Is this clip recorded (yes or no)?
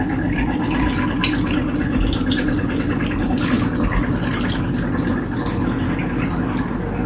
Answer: yes